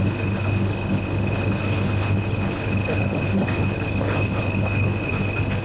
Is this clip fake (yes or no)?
yes